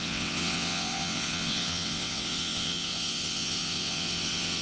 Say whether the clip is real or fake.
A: fake